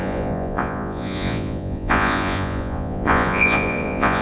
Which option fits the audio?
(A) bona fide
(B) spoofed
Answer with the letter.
B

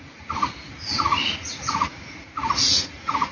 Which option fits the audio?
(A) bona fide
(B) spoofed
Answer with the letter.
B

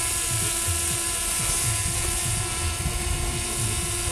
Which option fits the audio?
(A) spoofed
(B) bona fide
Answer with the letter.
B